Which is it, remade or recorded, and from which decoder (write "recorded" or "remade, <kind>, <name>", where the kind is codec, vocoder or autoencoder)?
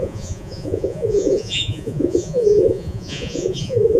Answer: remade, vocoder, Vocos